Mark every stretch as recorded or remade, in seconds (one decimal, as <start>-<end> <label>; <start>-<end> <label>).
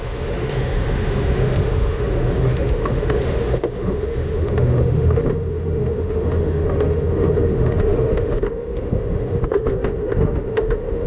0.0-11.1 remade